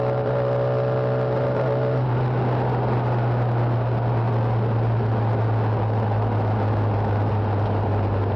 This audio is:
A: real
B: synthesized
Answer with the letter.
A